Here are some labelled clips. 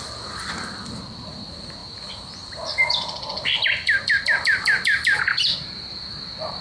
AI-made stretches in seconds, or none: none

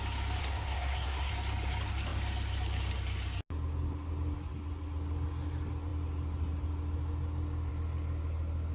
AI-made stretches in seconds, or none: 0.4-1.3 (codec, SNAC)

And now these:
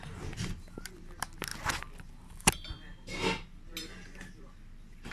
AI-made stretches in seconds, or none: none

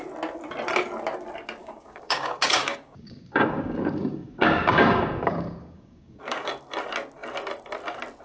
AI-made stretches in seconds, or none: 1.6-6.5 (codec, DAC)

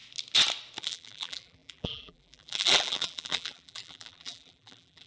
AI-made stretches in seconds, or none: 0.8-5.1 (vocoder, BigVGAN v2)